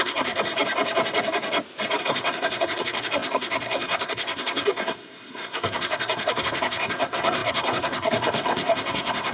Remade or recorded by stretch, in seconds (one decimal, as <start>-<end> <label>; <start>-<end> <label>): 0.0-0.5 remade; 0.5-2.0 recorded; 2.0-9.3 remade